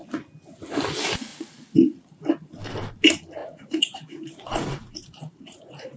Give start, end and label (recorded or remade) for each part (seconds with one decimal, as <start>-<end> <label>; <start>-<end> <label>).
0.0-3.4 recorded; 3.4-6.0 remade